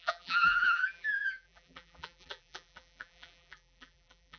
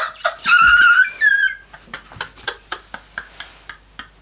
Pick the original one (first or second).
second